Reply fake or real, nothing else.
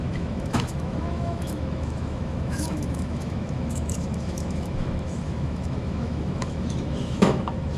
fake